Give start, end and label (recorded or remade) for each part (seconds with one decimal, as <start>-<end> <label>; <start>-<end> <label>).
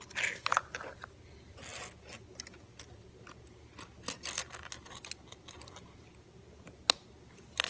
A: 0.0-7.7 recorded